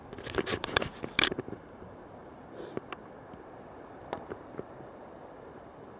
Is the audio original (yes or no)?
yes